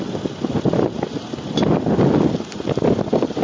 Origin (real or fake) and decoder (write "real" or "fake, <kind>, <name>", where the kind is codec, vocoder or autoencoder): real